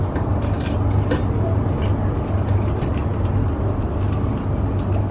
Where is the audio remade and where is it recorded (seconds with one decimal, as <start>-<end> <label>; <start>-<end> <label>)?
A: 0.0-5.1 recorded